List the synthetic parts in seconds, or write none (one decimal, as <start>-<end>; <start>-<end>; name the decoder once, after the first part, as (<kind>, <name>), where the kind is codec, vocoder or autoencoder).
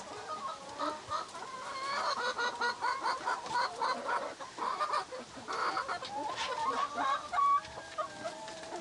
none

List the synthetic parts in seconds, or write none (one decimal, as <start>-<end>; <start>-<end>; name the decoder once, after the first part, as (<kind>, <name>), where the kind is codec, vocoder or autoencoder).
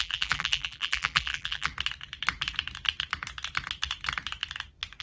0.0-1.7 (vocoder, BigVGAN v2)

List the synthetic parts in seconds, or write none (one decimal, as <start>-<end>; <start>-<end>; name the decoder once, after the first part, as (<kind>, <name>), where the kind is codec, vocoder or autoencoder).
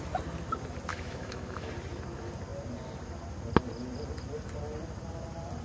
0.9-1.7 (autoencoder, DAC-VAE)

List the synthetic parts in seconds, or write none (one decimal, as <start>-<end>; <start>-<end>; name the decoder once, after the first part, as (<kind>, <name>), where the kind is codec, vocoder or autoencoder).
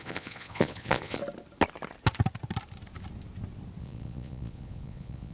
0.0-1.2 (vocoder, Vocos); 3.8-5.3